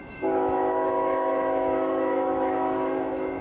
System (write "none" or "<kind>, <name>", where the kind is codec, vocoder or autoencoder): autoencoder, DAC-VAE